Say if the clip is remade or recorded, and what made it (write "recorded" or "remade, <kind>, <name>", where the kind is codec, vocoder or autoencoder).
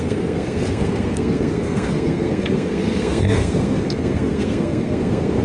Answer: remade, codec, SNAC